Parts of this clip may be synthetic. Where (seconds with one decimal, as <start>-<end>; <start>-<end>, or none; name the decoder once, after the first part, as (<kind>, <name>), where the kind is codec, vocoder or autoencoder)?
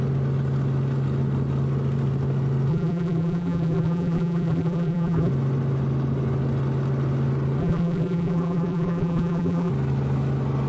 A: 2.7-5.3 (vocoder, BigVGAN v2); 7.6-9.7